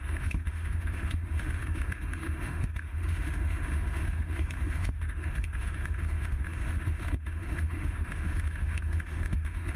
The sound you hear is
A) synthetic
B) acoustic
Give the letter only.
A